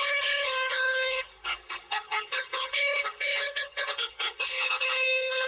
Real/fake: fake